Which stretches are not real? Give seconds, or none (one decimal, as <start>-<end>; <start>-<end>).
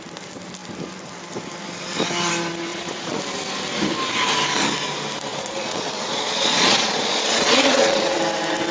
2.7-3.2; 5.3-8.2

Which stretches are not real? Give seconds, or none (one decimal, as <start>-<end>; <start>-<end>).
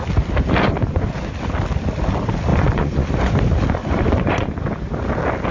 0.8-1.3; 2.5-3.3; 3.8-4.5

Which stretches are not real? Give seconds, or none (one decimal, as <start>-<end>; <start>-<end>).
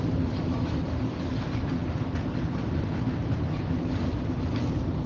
none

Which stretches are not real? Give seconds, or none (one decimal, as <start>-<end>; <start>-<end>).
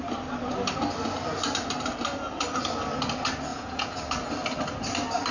3.5-4.0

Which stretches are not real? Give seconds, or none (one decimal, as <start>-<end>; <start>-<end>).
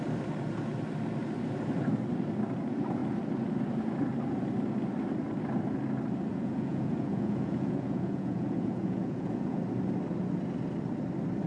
6.3-9.6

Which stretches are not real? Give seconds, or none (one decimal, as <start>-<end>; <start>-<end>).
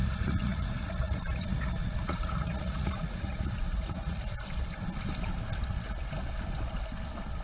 0.0-4.4